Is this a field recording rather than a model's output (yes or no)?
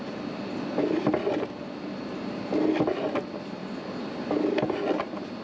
yes